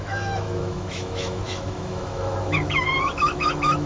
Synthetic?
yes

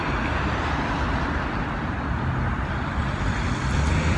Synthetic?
yes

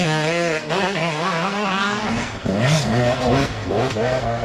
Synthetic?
yes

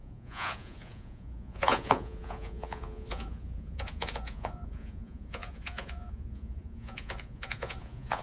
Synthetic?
yes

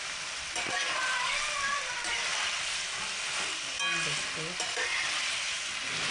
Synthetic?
no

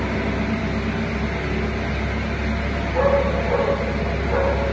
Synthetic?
no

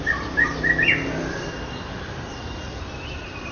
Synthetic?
no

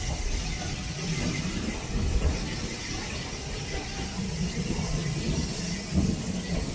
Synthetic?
no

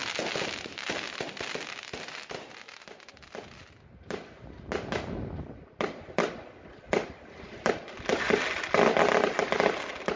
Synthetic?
no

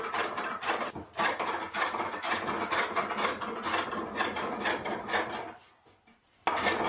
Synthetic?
no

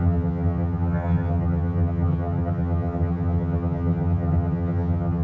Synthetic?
yes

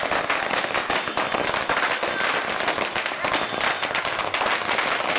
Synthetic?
no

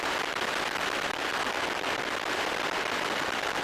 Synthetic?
yes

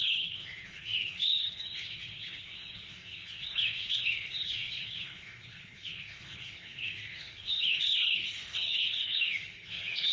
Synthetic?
yes